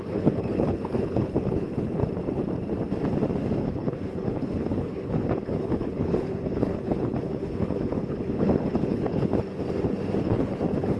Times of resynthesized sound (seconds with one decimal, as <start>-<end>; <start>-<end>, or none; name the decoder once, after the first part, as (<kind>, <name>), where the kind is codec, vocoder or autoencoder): 0.0-2.0 (codec, HILCodec); 3.6-9.3; 10.2-11.0